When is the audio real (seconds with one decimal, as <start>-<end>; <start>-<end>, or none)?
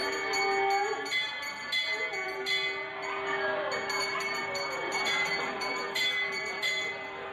0.0-4.0